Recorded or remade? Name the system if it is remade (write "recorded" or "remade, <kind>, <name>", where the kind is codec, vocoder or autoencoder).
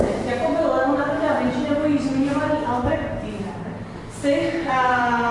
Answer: recorded